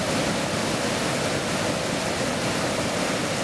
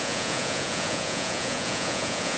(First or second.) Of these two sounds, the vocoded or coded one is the second